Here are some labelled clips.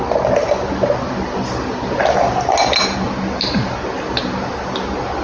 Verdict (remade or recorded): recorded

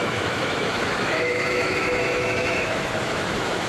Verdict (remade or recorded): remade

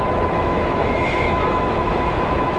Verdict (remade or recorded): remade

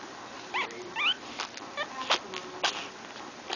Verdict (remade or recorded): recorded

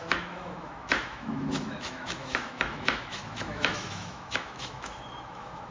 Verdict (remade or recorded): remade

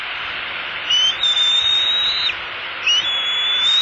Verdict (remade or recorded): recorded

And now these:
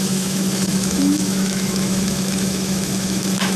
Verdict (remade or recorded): remade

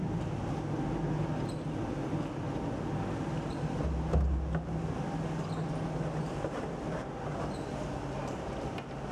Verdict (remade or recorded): recorded